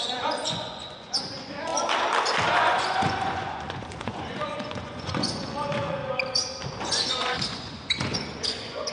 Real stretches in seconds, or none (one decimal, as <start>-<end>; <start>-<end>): 1.7-2.5; 6.0-6.7